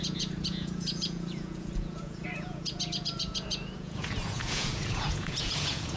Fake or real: fake